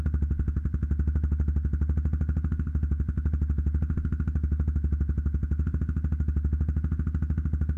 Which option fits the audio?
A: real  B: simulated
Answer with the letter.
A